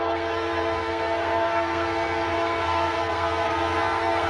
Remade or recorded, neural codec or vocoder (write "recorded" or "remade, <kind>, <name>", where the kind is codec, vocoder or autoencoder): remade, codec, SNAC